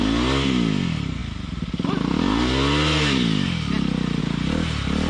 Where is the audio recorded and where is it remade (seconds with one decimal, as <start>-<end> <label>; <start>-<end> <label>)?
0.0-5.1 recorded